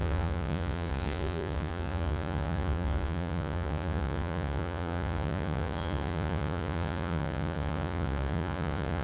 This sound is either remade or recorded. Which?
remade